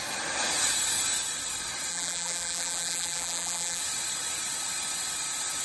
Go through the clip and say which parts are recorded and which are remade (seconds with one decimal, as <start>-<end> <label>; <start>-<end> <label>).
0.0-1.9 recorded; 1.9-3.8 remade; 3.8-5.6 recorded

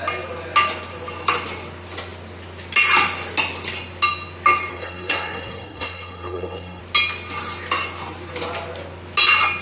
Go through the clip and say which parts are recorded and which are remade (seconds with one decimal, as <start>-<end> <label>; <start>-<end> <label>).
0.0-4.7 recorded; 4.7-6.8 remade; 6.8-9.6 recorded

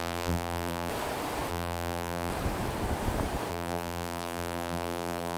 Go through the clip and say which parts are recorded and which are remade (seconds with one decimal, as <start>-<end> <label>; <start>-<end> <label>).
0.0-0.9 remade; 0.9-1.5 recorded; 1.5-2.3 remade; 2.3-3.5 recorded; 3.5-5.4 remade

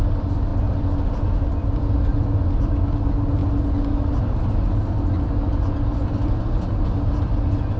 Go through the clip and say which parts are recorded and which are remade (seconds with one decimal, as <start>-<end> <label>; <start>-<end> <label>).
0.0-7.8 recorded